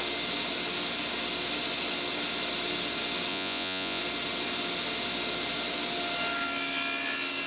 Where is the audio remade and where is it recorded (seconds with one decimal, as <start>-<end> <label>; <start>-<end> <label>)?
0.0-3.3 recorded; 3.3-4.0 remade; 4.0-7.5 recorded